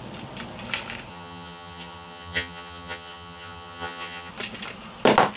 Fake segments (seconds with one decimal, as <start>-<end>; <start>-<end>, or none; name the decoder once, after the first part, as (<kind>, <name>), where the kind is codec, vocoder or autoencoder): 1.1-4.3 (vocoder, HiFi-GAN)